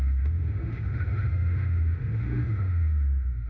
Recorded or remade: remade